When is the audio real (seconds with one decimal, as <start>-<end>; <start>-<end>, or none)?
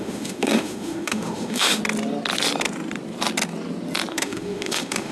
1.8-4.1